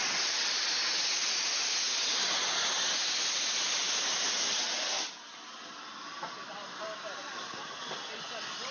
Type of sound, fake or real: real